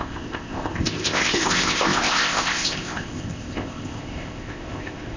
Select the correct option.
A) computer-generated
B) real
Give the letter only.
A